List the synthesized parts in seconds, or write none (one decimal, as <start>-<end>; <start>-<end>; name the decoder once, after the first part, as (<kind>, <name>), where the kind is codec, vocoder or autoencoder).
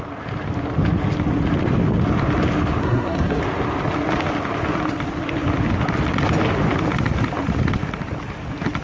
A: 2.8-3.4 (codec, SNAC)